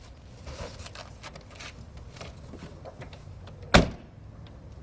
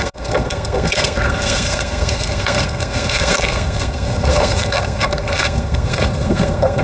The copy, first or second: second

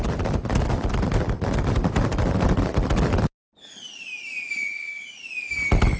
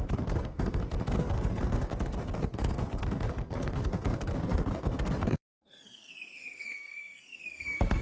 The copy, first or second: second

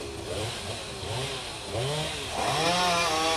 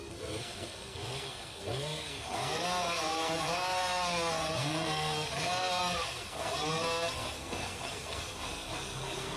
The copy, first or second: second